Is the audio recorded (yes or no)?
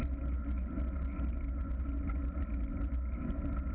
yes